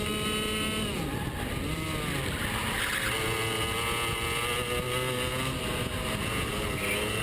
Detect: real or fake real